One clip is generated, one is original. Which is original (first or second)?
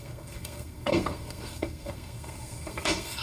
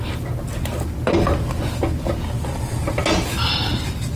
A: second